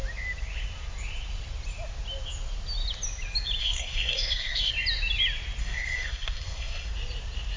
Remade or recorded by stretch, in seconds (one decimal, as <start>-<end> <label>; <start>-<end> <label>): 0.0-3.6 recorded; 3.6-4.7 remade; 4.7-5.6 recorded; 5.6-6.9 remade; 6.9-7.6 recorded

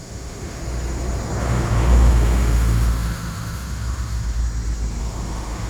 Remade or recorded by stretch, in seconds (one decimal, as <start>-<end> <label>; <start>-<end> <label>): 0.0-0.6 remade; 0.6-1.4 recorded; 1.4-4.4 remade; 4.4-5.0 recorded; 5.0-5.7 remade

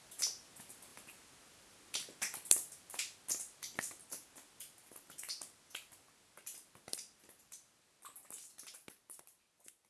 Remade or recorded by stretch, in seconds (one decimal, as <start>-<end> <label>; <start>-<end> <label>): 0.0-9.9 recorded